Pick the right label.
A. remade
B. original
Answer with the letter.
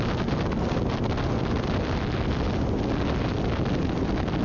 B